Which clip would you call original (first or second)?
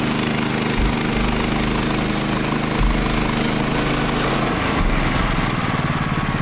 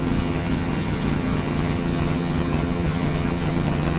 first